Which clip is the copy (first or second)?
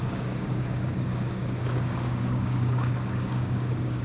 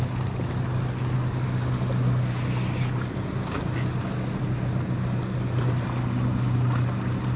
first